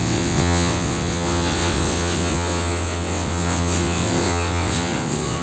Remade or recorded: remade